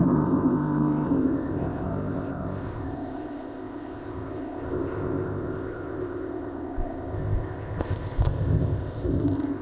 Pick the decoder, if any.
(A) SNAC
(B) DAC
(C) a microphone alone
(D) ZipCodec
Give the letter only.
D